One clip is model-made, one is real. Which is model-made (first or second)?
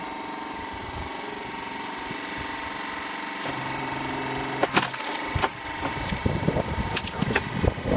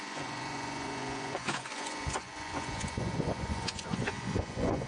second